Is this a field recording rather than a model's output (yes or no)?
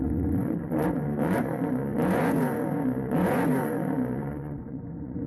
no